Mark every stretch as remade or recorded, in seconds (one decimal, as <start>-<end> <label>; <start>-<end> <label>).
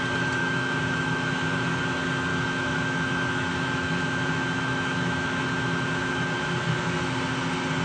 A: 0.0-0.4 recorded; 0.4-1.8 remade; 1.8-2.3 recorded; 2.3-7.0 remade; 7.0-7.8 recorded